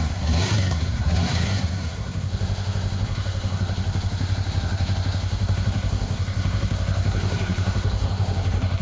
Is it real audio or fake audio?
fake